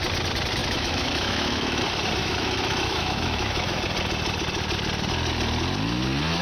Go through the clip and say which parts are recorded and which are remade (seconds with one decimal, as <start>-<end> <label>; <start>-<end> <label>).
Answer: 0.0-0.6 recorded; 0.6-1.8 remade; 1.8-2.2 recorded; 2.2-3.8 remade; 3.8-6.4 recorded